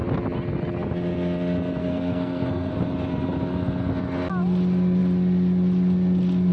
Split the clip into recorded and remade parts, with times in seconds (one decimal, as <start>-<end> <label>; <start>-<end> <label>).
0.0-1.8 recorded; 1.8-2.7 remade; 2.7-6.5 recorded